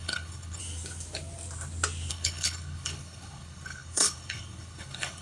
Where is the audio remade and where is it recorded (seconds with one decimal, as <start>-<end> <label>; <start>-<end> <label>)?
0.0-0.6 remade; 0.6-2.1 recorded; 2.1-5.2 remade